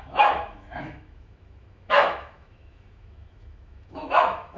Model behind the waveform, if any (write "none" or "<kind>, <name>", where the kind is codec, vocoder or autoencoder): autoencoder, DAC-VAE